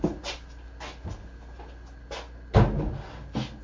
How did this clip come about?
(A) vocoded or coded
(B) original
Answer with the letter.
B